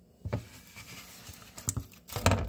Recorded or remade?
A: recorded